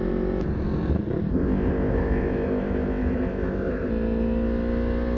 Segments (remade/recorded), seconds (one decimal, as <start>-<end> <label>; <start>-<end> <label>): 0.0-1.3 recorded; 1.3-3.9 remade; 3.9-5.2 recorded